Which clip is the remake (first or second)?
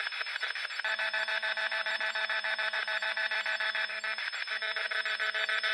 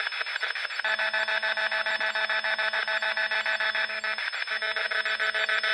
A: first